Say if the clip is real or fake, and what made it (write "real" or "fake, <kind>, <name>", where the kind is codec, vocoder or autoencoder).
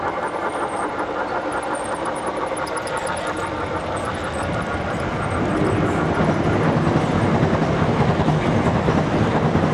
real